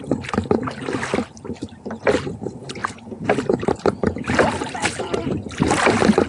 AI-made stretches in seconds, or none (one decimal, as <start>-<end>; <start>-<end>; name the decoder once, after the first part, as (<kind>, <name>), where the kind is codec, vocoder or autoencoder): none